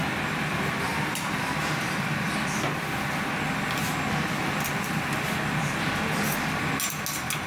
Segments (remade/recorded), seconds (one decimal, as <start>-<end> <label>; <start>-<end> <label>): 0.0-0.9 recorded; 0.9-2.3 remade; 2.3-7.5 recorded